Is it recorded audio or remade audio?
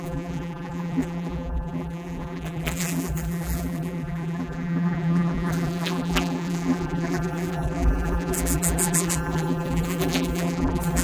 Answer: remade